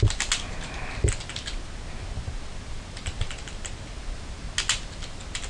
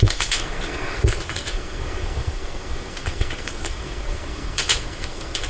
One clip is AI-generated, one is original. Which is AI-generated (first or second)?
second